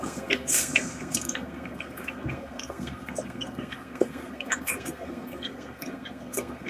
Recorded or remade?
remade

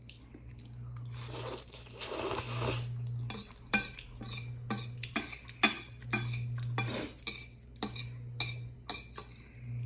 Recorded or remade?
recorded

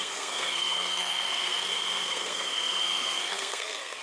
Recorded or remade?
remade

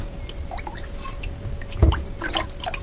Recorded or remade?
recorded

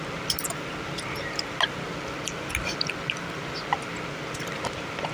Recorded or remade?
recorded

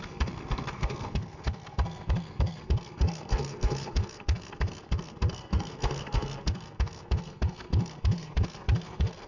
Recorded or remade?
remade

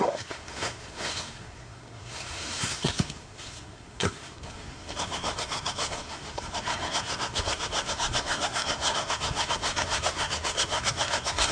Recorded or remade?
remade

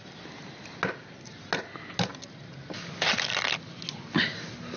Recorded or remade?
recorded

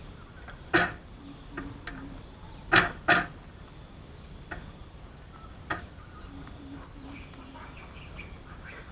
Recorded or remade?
recorded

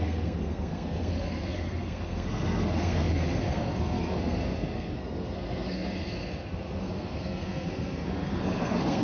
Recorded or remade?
remade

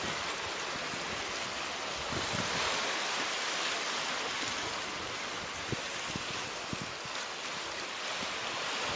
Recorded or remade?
recorded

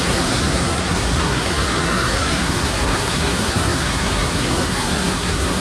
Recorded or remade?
remade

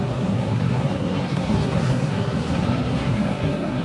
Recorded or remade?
remade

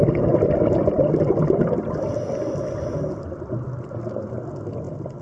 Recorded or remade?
recorded